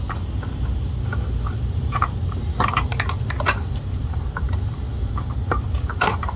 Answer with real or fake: real